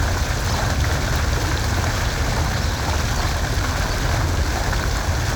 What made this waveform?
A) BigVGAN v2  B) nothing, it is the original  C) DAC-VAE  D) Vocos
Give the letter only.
B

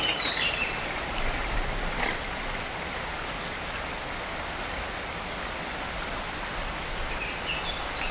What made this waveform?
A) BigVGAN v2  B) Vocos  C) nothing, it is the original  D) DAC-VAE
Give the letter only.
C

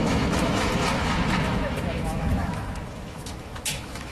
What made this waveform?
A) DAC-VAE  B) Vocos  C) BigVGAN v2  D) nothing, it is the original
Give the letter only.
A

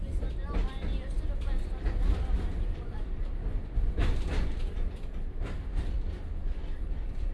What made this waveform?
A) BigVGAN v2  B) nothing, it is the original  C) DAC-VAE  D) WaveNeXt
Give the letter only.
B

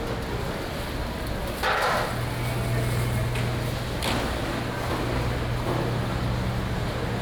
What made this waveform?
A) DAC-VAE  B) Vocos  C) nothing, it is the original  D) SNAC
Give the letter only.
C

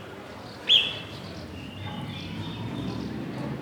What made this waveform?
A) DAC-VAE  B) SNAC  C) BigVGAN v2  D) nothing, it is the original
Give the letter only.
D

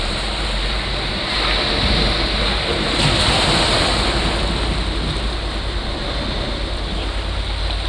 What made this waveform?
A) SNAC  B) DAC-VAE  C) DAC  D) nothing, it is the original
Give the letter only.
D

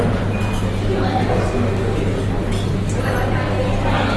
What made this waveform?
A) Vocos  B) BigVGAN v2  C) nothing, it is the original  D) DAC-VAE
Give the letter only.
C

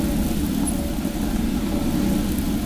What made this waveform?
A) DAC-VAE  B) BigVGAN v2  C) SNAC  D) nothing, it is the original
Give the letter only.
D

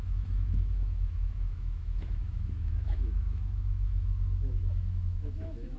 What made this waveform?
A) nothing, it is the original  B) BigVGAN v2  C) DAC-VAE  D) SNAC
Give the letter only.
C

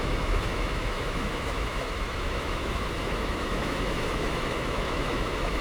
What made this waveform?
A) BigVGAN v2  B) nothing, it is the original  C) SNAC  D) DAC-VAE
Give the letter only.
D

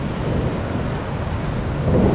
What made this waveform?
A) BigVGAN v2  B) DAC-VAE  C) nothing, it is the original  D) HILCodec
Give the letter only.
C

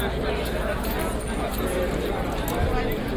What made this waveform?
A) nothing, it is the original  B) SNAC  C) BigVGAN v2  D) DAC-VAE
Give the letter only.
A